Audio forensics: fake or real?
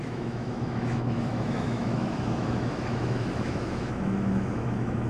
fake